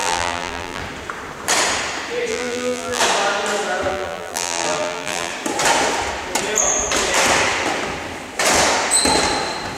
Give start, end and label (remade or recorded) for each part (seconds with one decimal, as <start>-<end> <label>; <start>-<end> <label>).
0.0-0.8 remade; 0.8-2.3 recorded; 2.3-3.0 remade; 3.0-3.9 recorded; 3.9-5.3 remade; 5.3-9.8 recorded